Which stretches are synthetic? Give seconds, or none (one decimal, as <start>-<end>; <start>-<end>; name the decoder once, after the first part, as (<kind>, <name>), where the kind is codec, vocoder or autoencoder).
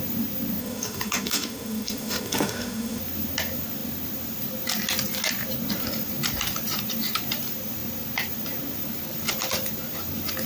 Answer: 0.6-3.0 (autoencoder, DAC-VAE)